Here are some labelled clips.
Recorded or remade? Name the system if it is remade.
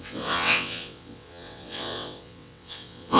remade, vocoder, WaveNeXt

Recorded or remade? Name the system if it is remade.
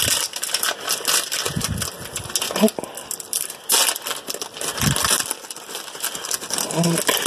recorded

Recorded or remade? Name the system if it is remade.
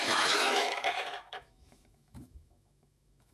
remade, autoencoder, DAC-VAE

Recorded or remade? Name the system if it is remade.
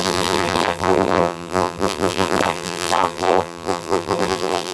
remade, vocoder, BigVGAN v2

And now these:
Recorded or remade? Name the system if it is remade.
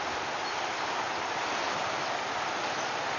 recorded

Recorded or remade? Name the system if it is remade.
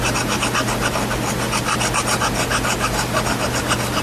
recorded